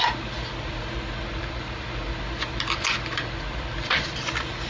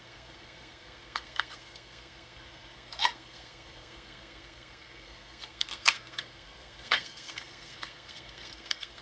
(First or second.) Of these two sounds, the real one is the first